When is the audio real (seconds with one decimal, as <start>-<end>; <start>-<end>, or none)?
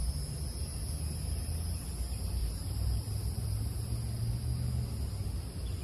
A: 0.0-2.4; 3.6-5.8